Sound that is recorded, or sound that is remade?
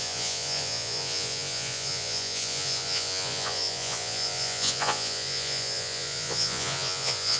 remade